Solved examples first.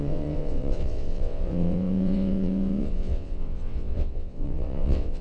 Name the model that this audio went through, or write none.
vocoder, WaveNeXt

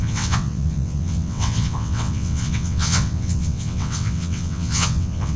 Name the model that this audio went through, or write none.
vocoder, WaveNeXt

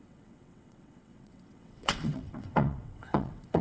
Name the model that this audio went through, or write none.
vocoder, WaveNeXt